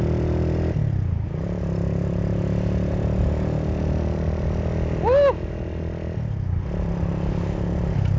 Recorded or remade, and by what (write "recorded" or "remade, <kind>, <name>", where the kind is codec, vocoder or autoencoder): recorded